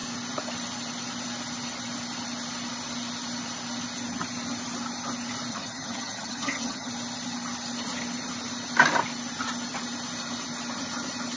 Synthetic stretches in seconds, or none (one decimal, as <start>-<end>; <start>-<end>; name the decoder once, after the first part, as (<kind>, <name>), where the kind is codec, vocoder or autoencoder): 5.5-6.9 (vocoder, HiFi-GAN)